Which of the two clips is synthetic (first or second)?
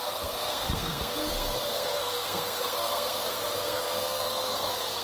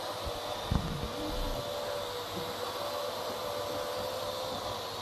first